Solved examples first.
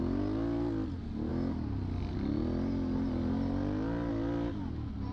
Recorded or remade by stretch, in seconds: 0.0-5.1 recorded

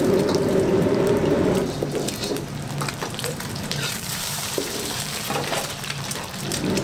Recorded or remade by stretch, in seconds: 0.0-1.4 remade; 1.4-3.2 recorded; 3.2-6.8 remade

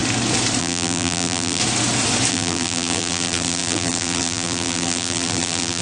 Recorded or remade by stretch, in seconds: 0.0-0.6 recorded; 0.6-1.6 remade; 1.6-2.3 recorded; 2.3-5.8 remade